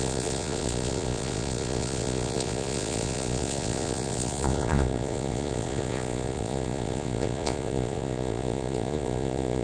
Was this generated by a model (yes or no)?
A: yes